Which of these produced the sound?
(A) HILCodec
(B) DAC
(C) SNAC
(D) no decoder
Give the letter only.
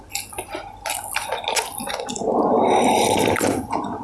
D